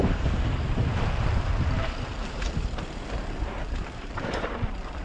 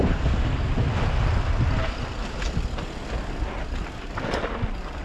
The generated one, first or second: first